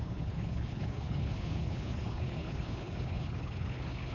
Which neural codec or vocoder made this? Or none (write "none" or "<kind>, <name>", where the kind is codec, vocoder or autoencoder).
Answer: codec, HILCodec